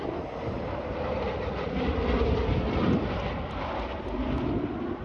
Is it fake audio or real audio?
real